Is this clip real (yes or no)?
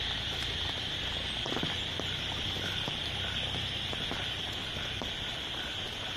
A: no